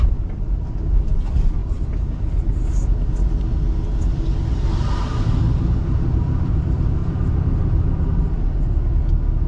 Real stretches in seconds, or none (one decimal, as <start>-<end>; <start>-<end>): 0.0-9.5